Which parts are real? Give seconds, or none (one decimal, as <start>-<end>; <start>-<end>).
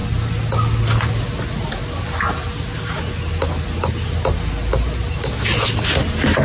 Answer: 0.0-6.4